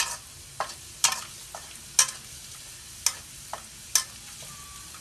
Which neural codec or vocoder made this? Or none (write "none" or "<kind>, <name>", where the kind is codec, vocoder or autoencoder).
none